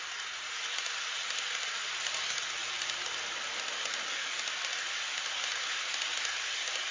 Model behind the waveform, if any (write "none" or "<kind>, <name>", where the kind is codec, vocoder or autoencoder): none